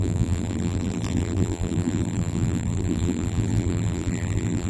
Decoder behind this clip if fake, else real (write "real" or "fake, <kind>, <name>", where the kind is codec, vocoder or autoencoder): fake, vocoder, BigVGAN v2